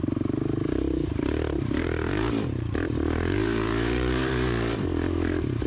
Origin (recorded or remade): remade